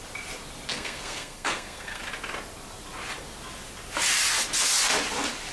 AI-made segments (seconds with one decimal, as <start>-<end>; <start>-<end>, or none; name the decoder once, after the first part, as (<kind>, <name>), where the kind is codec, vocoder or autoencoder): 0.7-2.0 (codec, SNAC)